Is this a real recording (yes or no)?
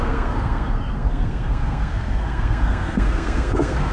no